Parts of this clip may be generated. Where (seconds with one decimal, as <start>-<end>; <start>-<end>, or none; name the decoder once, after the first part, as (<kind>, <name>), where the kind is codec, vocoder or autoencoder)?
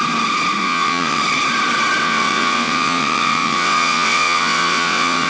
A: 0.6-1.2 (vocoder, WaveNeXt); 2.0-5.3